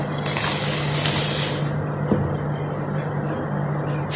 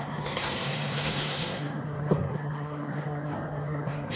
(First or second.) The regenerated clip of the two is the second